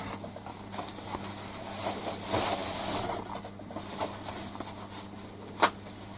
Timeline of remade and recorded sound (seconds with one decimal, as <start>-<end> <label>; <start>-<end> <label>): 0.0-6.2 recorded